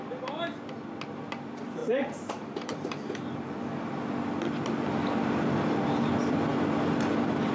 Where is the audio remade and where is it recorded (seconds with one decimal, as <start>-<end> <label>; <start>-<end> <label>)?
0.0-1.8 recorded; 1.8-3.9 remade; 3.9-7.5 recorded